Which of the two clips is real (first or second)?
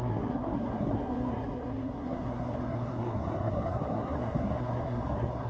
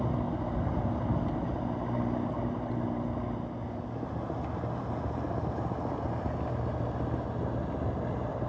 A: second